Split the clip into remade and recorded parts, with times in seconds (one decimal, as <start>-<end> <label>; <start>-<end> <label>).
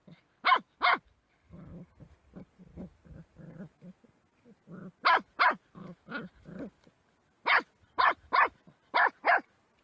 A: 0.0-9.8 recorded